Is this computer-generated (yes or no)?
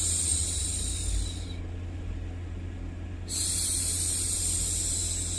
no